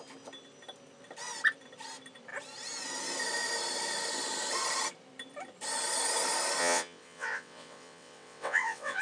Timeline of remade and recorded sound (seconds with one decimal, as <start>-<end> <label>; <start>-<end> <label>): 0.0-6.6 recorded; 6.6-9.0 remade